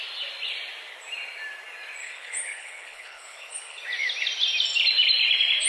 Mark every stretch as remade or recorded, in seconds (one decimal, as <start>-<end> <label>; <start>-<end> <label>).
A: 0.0-2.0 recorded; 2.0-3.8 remade; 3.8-5.7 recorded